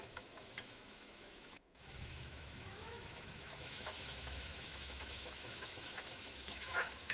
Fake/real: fake